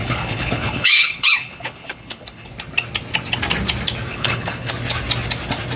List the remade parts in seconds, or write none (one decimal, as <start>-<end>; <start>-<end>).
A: 0.0-2.5; 4.1-4.7